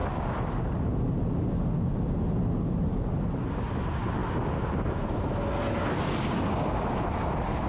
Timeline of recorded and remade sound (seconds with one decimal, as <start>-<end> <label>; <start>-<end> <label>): 0.0-7.7 recorded